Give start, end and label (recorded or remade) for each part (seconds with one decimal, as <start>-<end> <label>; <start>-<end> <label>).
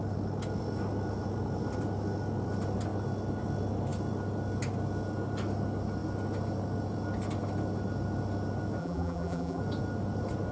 0.0-8.8 recorded; 8.8-9.6 remade; 9.6-10.5 recorded